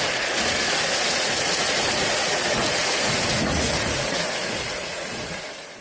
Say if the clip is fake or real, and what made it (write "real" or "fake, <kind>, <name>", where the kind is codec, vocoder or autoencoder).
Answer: fake, vocoder, Vocos